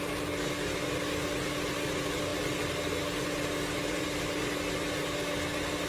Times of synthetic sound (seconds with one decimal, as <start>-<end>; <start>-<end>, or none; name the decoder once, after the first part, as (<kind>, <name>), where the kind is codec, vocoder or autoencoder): none